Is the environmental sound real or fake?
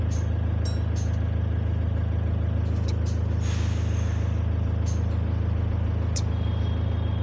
real